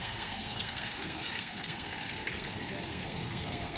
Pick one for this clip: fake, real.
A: fake